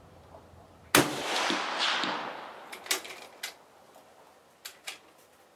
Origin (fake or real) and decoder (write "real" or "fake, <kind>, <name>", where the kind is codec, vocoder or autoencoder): real